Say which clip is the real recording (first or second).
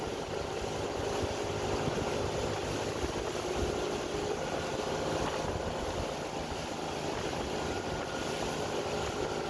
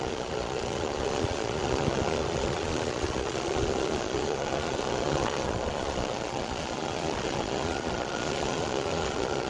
first